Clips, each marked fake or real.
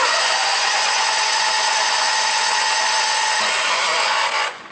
fake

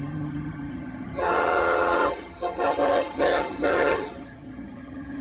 fake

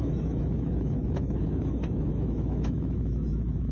fake